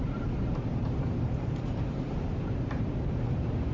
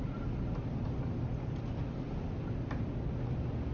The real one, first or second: second